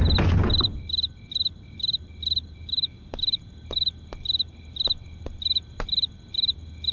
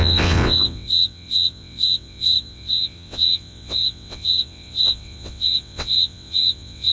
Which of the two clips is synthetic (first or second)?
second